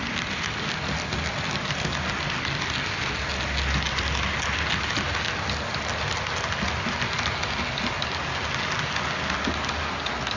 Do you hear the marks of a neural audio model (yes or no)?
no